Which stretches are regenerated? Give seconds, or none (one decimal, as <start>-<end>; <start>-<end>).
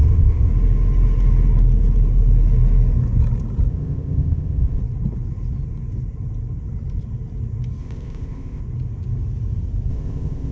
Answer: 0.0-0.5; 3.7-4.8; 7.8-8.6; 9.9-10.5